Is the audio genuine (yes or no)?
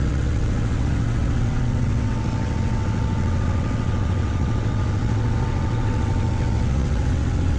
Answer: no